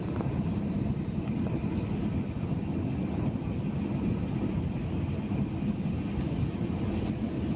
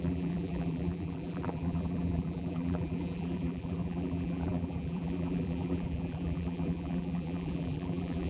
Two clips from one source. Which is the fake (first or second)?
second